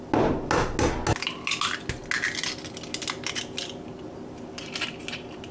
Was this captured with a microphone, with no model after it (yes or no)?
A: yes